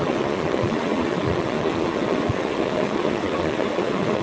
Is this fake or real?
fake